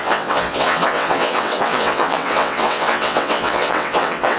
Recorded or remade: remade